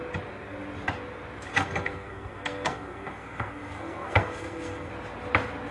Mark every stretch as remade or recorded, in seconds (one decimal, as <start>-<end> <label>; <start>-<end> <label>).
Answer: 0.0-1.5 recorded; 1.5-4.9 remade; 4.9-5.7 recorded